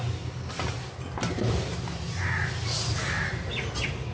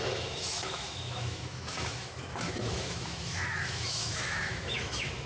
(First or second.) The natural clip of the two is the first